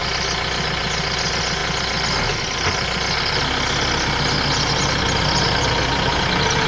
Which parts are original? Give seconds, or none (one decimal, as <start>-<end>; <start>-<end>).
0.0-6.7